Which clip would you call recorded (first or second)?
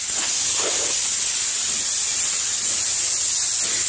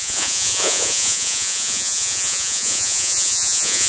first